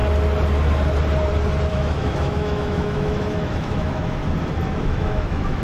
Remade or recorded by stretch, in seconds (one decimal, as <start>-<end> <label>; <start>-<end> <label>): 0.0-1.6 recorded; 1.6-4.2 remade; 4.2-4.8 recorded; 4.8-5.6 remade